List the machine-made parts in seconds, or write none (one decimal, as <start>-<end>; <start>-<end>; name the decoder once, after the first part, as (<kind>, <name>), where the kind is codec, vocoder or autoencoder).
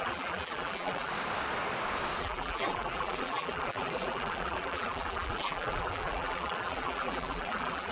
0.0-1.1 (vocoder, BigVGAN v2); 2.2-7.9